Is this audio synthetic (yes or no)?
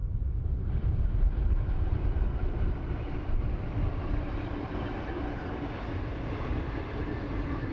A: no